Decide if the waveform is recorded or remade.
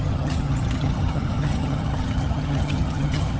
remade